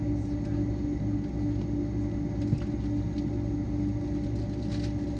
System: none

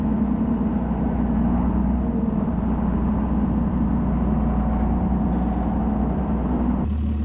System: none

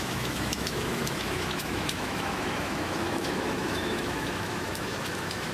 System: autoencoder, DAC-VAE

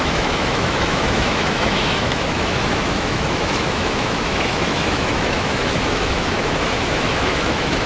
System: autoencoder, DAC-VAE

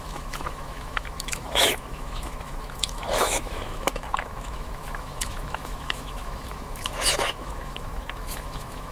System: autoencoder, DAC-VAE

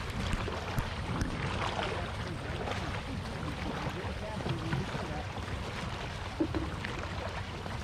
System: none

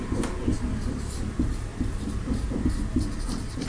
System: none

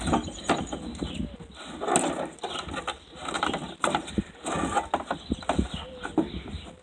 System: none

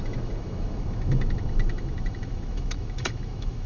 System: autoencoder, DAC-VAE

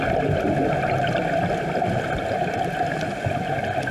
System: none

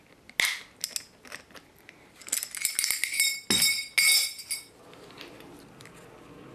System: none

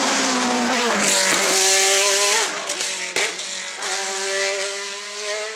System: none